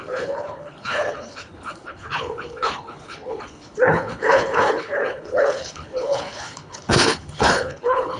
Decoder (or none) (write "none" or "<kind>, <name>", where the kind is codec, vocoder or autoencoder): codec, HILCodec